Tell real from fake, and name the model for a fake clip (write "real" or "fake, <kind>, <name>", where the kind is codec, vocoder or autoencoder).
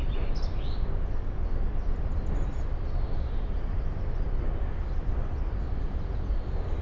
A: real